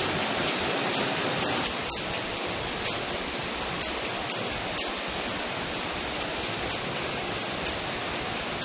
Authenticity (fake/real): real